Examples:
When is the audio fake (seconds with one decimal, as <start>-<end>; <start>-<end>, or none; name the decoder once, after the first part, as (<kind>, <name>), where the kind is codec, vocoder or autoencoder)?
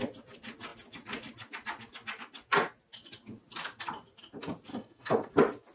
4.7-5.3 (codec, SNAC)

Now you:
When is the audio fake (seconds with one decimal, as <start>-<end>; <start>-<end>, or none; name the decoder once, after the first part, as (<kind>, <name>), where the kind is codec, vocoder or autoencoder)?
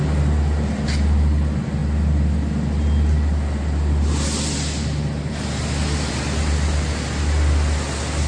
none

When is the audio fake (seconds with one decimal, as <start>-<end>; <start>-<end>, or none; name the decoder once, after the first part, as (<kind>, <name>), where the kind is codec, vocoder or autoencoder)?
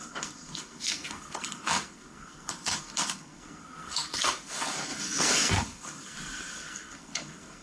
0.0-7.6 (codec, SNAC)